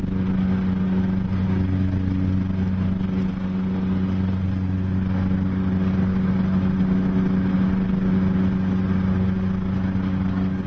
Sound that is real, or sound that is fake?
real